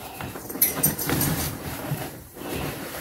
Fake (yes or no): yes